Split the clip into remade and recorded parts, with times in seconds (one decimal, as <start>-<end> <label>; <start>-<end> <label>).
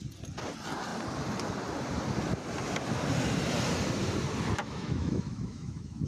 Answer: 0.0-4.6 recorded; 4.6-6.1 remade